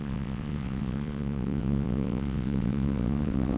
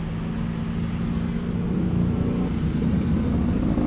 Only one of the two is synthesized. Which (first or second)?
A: first